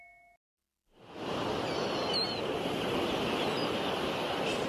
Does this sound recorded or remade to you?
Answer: recorded